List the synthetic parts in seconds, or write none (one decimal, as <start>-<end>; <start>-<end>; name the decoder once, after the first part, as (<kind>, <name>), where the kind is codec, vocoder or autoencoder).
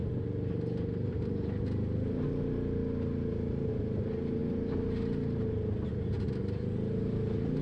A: none